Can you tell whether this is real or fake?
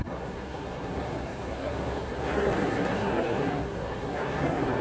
fake